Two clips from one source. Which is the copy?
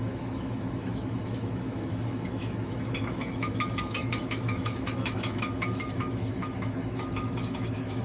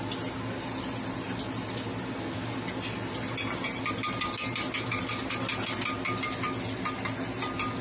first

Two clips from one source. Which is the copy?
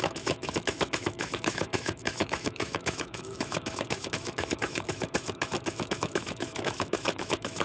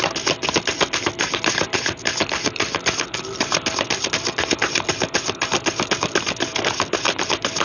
first